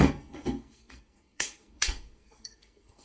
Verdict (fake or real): fake